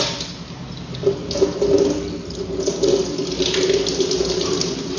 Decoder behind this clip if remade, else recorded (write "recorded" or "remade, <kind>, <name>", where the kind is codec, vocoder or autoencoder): recorded